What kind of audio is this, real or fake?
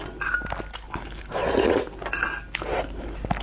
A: real